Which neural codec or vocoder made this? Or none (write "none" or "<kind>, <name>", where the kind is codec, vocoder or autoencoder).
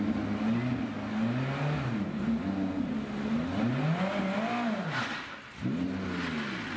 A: none